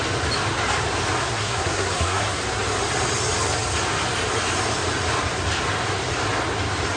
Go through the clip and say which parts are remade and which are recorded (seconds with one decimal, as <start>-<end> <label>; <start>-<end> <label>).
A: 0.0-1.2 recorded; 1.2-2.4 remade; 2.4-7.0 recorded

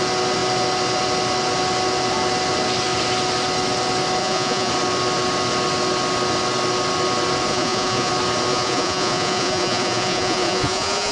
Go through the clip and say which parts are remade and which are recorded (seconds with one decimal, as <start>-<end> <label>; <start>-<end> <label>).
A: 0.0-4.2 recorded; 4.2-4.7 remade; 4.7-7.5 recorded; 7.5-8.1 remade; 8.1-8.5 recorded; 8.5-11.1 remade

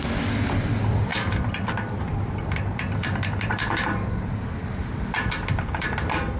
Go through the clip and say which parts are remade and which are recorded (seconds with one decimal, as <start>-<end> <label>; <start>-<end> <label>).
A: 0.0-6.4 recorded